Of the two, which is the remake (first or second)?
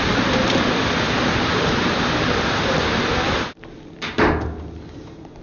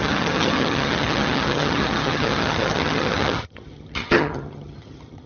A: second